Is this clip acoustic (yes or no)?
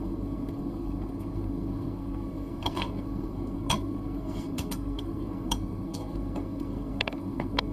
no